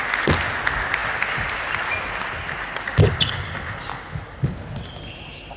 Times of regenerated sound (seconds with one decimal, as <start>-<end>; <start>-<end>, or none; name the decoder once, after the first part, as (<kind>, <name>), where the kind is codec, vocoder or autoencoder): none